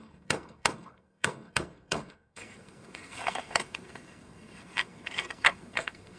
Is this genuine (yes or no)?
no